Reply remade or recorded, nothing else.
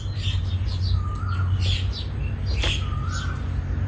recorded